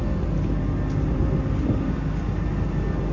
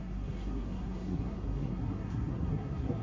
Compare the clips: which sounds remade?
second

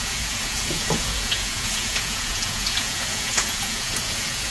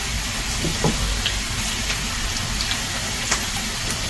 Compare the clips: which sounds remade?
first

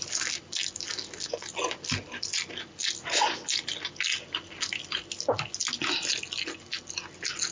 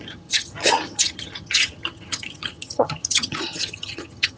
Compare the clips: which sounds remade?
second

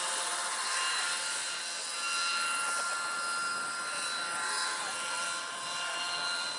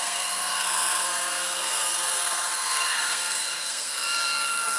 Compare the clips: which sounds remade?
second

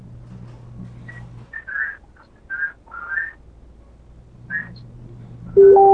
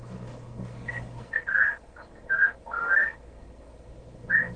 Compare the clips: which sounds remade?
second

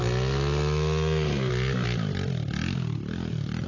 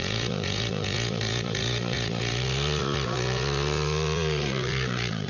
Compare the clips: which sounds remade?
second